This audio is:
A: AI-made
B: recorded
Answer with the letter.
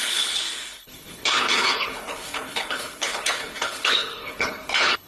A